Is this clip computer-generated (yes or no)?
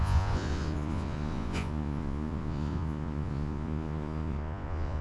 yes